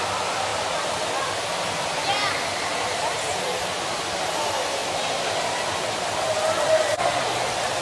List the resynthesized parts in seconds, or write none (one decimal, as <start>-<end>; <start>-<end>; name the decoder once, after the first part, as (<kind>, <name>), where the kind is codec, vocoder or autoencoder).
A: none